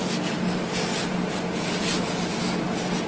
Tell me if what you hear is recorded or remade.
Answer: recorded